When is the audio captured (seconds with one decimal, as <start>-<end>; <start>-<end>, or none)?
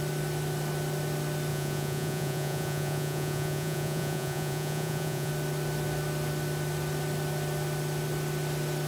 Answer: 0.0-1.5; 5.3-8.9